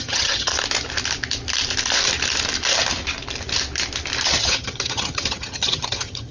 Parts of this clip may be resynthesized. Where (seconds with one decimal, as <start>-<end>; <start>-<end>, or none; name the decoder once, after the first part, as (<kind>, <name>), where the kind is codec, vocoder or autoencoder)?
0.0-0.5 (vocoder, HiFi-GAN); 4.3-6.3